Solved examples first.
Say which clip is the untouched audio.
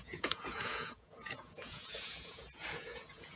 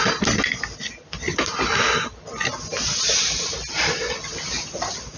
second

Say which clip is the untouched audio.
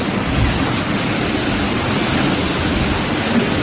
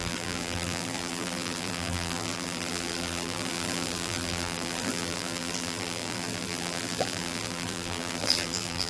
first